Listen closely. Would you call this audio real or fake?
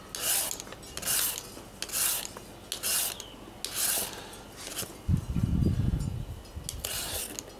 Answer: real